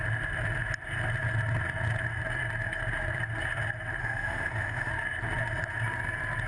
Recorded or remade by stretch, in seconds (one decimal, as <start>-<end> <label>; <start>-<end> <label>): 0.0-4.0 recorded; 4.0-4.9 remade; 4.9-6.5 recorded